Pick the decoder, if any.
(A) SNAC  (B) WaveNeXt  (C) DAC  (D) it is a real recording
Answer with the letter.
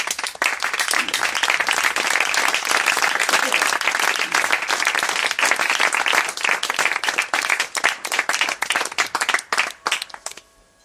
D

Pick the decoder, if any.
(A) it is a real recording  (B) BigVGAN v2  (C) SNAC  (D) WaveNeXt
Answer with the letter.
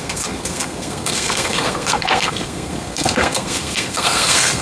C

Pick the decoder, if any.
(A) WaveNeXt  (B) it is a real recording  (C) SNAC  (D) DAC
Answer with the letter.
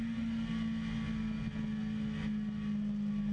B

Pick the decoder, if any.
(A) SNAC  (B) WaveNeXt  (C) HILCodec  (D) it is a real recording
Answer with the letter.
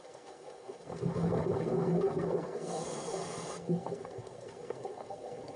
A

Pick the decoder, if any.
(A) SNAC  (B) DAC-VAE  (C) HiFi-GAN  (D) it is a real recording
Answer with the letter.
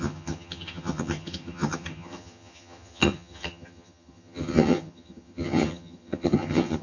C